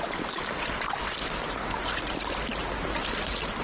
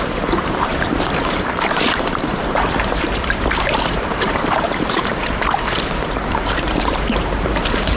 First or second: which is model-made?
second